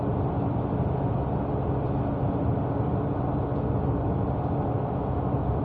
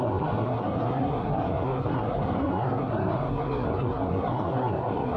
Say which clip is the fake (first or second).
second